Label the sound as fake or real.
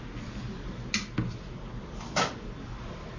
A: real